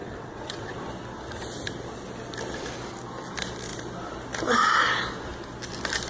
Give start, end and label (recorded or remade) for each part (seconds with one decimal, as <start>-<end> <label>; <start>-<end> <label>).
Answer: 0.0-0.7 remade; 0.7-6.1 recorded